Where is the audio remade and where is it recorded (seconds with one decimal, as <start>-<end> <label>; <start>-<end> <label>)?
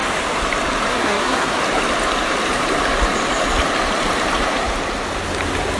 0.0-0.9 recorded; 0.9-1.6 remade; 1.6-5.8 recorded